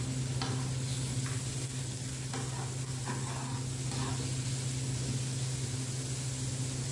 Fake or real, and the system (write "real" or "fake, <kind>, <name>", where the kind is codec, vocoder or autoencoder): real